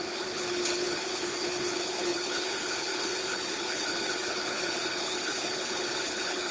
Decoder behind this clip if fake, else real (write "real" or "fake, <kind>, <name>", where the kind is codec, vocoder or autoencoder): fake, codec, HILCodec